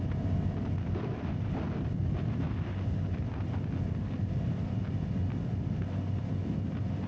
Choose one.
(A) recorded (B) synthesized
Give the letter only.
A